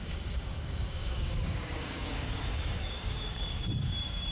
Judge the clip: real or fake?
fake